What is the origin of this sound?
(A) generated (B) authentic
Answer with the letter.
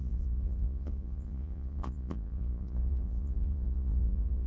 A